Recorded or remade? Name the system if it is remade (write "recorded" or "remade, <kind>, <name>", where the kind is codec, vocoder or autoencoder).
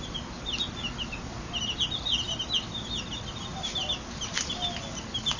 recorded